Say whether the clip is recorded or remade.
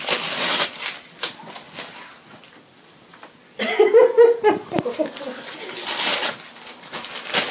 recorded